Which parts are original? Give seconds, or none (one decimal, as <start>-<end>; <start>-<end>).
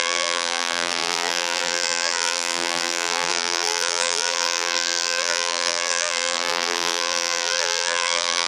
none